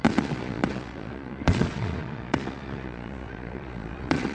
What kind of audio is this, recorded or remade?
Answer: remade